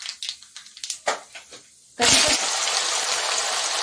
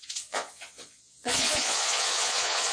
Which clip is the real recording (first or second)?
first